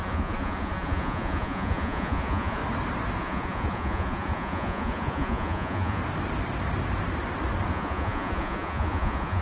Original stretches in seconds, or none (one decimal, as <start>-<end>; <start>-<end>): 2.6-3.2; 6.0-7.7

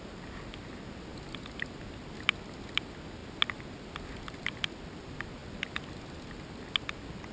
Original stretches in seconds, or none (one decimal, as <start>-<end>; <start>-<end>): 0.0-7.3